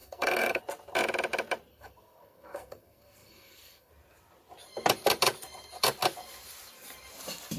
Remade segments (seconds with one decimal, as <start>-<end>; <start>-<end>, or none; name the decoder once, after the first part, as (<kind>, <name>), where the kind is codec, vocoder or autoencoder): 0.0-0.6 (codec, SNAC); 1.7-3.9